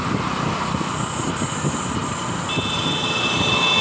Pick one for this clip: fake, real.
real